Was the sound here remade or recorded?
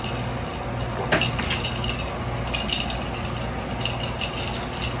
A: recorded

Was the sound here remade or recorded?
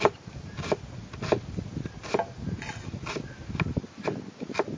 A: recorded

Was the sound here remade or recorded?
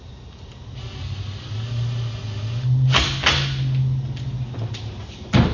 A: recorded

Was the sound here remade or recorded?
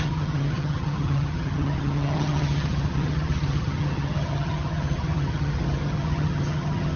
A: remade